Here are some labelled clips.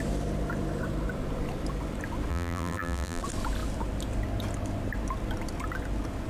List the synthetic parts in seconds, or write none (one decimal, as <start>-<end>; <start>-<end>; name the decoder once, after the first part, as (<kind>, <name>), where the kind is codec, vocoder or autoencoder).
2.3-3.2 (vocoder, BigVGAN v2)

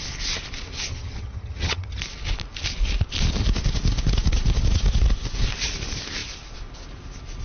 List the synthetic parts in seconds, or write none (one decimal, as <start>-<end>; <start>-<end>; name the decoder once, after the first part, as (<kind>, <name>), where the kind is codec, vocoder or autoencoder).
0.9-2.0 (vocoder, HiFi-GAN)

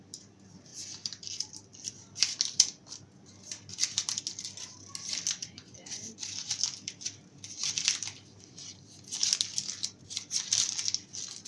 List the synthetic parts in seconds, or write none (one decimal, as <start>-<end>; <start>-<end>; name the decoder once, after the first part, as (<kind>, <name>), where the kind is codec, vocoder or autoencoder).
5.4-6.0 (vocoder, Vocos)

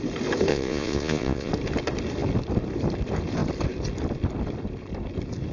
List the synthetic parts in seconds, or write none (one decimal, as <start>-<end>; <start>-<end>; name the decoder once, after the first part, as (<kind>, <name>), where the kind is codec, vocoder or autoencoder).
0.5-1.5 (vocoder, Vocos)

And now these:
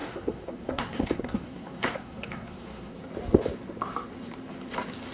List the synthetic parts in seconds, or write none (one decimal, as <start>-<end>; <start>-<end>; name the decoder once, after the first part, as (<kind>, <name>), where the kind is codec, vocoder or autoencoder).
0.0-2.9 (codec, SNAC)

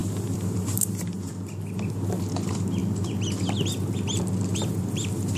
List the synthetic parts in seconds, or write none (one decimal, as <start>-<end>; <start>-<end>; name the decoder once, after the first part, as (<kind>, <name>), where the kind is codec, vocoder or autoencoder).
0.0-1.3 (vocoder, BigVGAN v2)

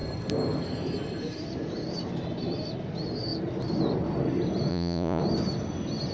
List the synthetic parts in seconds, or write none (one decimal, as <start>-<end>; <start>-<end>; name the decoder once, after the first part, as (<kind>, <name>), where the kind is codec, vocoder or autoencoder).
4.7-5.2 (vocoder, Vocos)

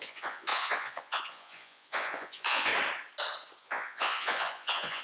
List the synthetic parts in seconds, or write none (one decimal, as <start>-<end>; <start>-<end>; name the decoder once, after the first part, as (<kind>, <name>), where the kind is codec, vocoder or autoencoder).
0.0-2.7 (vocoder, Vocos); 3.6-5.0